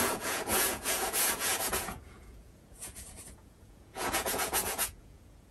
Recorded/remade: remade